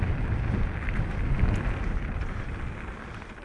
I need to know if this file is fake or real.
real